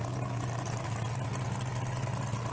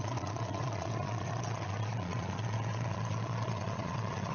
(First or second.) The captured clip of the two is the first